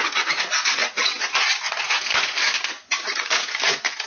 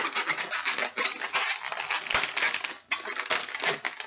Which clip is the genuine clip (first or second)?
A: second